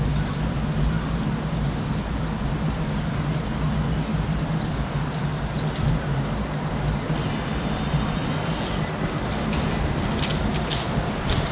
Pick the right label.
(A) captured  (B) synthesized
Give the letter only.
A